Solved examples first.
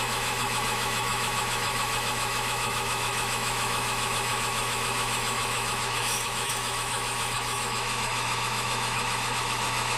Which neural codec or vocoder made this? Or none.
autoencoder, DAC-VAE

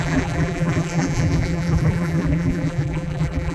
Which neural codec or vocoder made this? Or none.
vocoder, BigVGAN v2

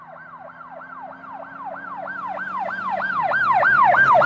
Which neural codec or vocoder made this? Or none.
none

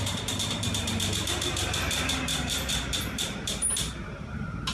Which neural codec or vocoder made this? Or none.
vocoder, BigVGAN v2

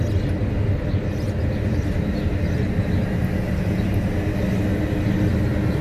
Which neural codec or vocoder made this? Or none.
none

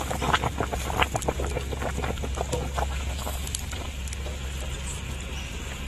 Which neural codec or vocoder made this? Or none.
none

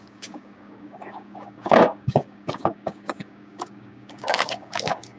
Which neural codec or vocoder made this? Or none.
codec, DAC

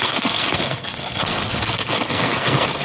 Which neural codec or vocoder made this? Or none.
codec, SNAC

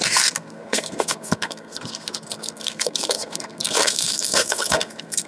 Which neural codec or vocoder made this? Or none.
codec, SNAC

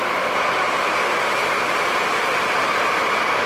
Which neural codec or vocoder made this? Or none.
none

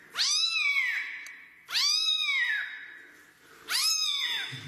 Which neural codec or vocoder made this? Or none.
none